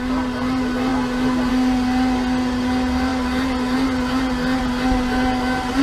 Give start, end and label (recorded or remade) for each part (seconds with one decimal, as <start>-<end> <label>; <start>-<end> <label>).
0.0-5.8 recorded